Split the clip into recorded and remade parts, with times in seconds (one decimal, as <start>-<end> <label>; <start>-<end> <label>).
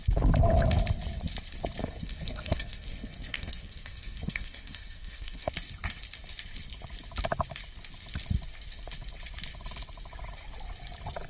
0.0-1.8 recorded; 1.8-5.5 remade; 5.5-11.3 recorded